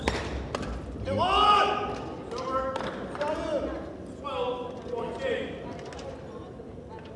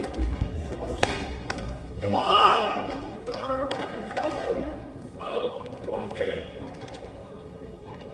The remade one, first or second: second